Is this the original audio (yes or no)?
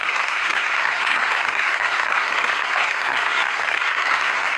no